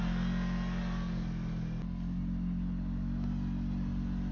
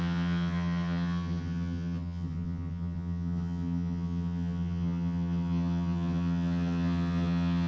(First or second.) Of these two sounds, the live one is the first